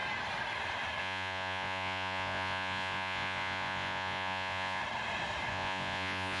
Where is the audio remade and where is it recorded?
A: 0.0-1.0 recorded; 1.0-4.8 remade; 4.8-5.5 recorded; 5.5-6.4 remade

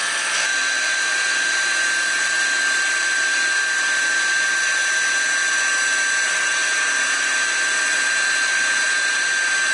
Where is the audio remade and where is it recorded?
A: 0.0-9.7 recorded

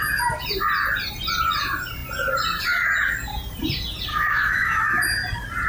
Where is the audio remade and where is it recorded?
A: 0.0-4.1 recorded; 4.1-5.0 remade; 5.0-5.7 recorded

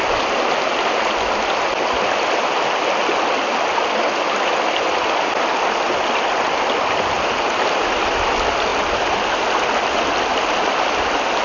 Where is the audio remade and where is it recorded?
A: 0.0-11.4 recorded

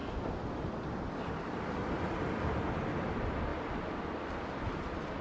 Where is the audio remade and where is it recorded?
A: 0.0-5.2 recorded

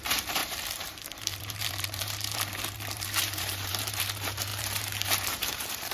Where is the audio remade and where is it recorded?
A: 0.0-5.9 remade